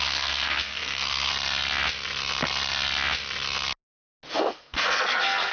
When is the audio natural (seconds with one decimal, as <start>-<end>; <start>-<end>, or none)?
1.3-4.3